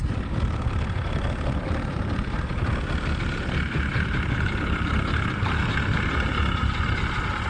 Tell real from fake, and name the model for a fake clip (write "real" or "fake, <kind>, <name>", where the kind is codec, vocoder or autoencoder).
real